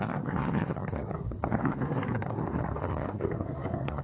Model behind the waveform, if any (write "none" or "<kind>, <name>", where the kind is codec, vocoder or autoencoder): codec, SNAC